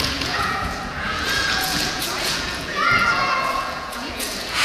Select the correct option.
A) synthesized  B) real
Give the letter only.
A